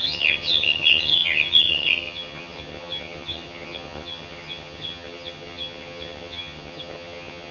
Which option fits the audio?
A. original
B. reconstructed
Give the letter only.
B